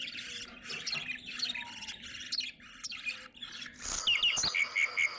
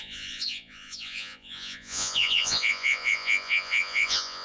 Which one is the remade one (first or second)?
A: second